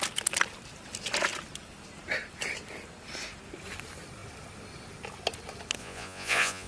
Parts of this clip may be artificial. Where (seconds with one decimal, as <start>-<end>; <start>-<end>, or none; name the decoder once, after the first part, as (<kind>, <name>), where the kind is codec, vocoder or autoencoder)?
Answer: 5.8-6.7 (vocoder, Vocos)